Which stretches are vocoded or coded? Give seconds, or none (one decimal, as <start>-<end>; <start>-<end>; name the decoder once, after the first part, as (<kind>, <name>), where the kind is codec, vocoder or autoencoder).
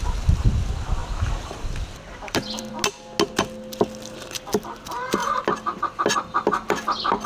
1.0-2.7 (vocoder, BigVGAN v2)